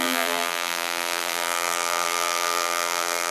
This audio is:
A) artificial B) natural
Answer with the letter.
A